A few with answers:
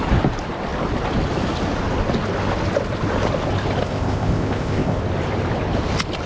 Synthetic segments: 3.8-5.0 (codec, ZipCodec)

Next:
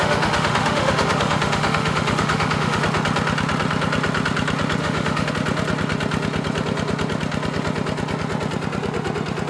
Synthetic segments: 0.0-2.8 (autoencoder, DAC-VAE); 4.8-5.3

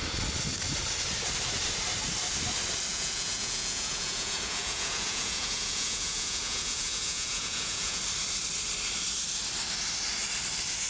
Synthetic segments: 2.9-8.0 (vocoder, Vocos)

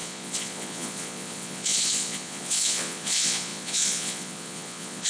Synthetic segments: 0.0-5.1 (vocoder, Vocos)

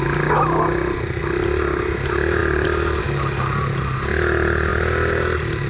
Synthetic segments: none